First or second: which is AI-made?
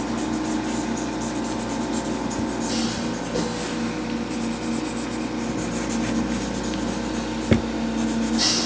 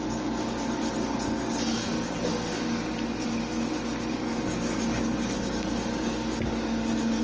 second